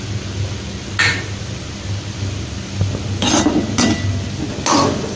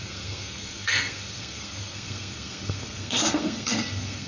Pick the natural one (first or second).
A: first